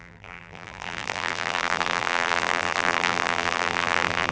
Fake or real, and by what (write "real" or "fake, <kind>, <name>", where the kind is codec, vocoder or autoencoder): fake, vocoder, BigVGAN v2